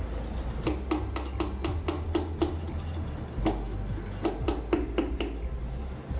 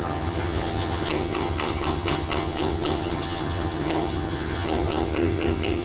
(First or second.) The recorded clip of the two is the first